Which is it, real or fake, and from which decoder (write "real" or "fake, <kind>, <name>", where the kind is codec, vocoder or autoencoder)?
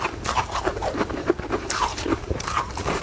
fake, vocoder, BigVGAN v2